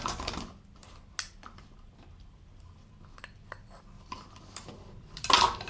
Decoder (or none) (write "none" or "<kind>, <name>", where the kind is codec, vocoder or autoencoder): none